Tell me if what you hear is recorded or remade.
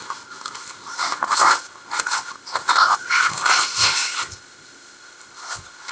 remade